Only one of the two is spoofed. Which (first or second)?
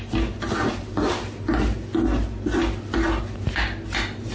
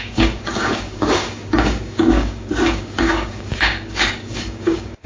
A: second